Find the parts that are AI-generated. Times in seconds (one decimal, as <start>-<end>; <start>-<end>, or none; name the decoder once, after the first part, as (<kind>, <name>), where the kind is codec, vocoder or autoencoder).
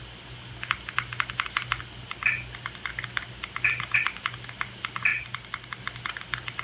none